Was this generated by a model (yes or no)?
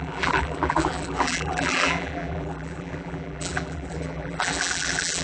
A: yes